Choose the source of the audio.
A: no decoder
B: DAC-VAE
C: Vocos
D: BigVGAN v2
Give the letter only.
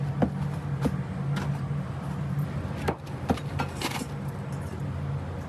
A